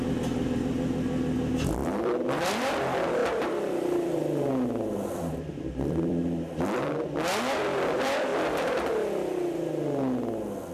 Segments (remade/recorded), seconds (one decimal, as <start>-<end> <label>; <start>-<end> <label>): 0.0-1.8 recorded; 1.8-2.8 remade; 2.8-3.2 recorded; 3.2-7.0 remade; 7.0-8.3 recorded; 8.3-8.9 remade; 8.9-10.7 recorded